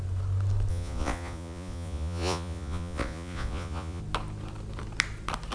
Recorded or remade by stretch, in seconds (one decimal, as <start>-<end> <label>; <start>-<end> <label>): 0.0-0.7 recorded; 0.7-4.0 remade; 4.0-5.5 recorded